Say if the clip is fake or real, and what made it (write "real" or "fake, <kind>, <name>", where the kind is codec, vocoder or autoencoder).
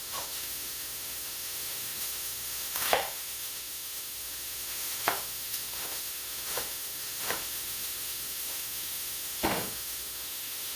fake, autoencoder, DAC-VAE